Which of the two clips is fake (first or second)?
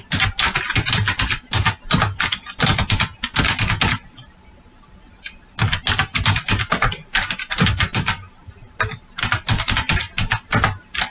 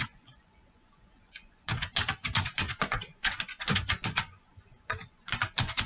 second